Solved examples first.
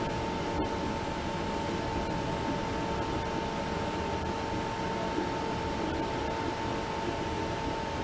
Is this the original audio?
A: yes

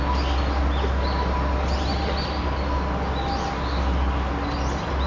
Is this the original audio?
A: yes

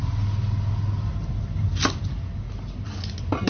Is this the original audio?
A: yes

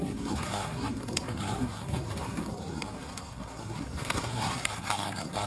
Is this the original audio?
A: no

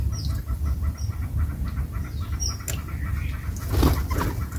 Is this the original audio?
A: yes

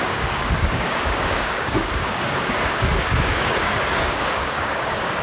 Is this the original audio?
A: no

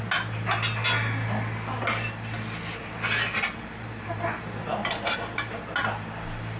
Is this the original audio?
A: yes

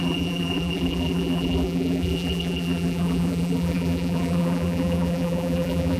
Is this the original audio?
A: no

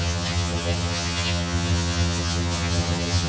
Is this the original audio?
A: no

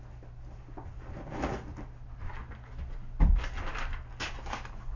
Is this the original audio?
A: yes